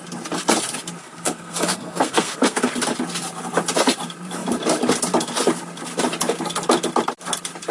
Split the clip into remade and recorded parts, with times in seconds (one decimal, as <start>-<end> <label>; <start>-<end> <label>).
0.0-1.0 recorded; 1.0-2.7 remade; 2.7-7.7 recorded